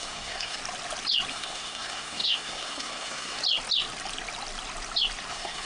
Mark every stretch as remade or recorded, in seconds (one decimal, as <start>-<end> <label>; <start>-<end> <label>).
0.0-0.6 remade; 0.6-1.3 recorded; 1.3-3.4 remade; 3.4-5.3 recorded; 5.3-5.7 remade